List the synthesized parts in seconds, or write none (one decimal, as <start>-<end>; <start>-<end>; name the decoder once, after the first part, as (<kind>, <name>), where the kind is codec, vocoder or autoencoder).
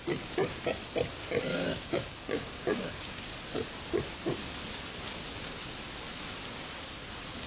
1.5-3.2 (codec, DAC); 5.2-5.7